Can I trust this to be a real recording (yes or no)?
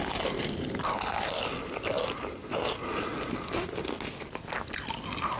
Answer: yes